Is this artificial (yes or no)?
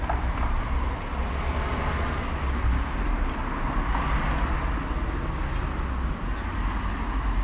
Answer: no